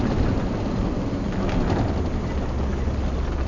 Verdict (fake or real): real